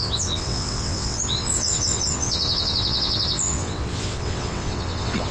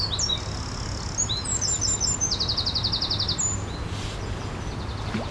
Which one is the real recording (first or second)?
second